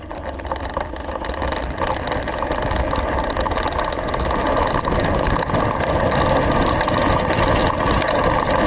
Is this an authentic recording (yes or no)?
yes